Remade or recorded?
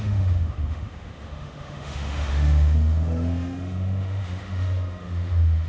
remade